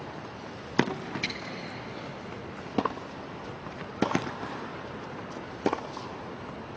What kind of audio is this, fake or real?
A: real